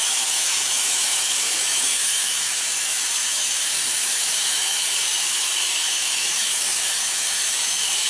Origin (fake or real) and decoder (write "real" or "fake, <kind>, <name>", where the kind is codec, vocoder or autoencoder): fake, autoencoder, DAC-VAE